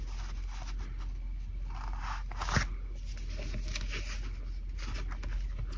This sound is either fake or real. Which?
real